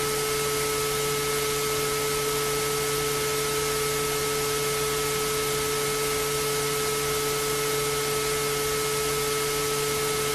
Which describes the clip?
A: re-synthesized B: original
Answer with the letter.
B